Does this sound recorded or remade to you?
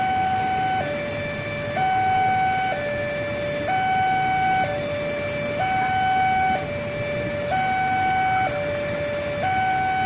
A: recorded